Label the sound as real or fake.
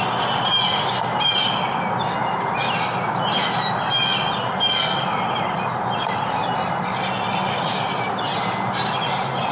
real